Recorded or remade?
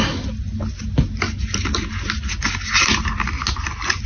recorded